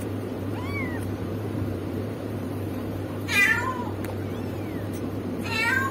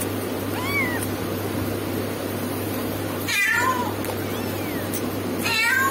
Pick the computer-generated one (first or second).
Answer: first